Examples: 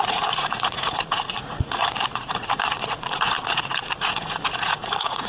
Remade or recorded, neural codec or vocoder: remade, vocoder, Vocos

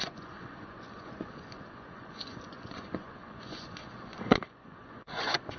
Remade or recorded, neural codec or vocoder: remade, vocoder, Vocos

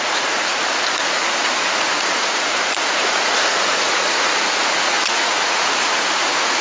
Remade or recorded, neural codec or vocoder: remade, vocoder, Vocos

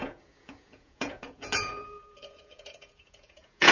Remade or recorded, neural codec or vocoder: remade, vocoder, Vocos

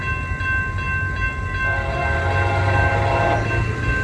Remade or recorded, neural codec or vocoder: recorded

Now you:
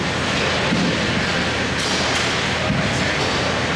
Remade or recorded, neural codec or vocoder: recorded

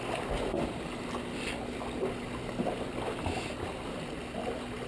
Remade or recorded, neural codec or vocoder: recorded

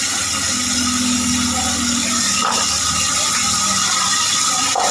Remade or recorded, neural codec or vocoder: recorded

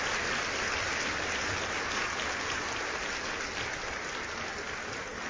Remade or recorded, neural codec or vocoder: recorded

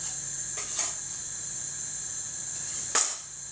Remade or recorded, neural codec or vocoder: recorded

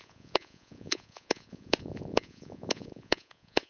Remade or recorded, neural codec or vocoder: remade, vocoder, Vocos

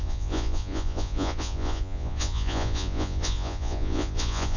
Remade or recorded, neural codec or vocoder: remade, vocoder, Vocos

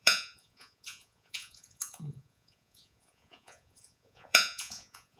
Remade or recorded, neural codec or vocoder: remade, vocoder, Vocos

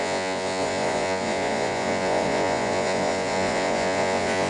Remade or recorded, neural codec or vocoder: remade, vocoder, Vocos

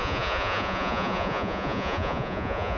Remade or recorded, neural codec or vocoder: remade, vocoder, Vocos